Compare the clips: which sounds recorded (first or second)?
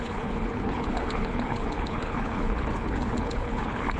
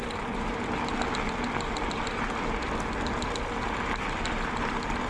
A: second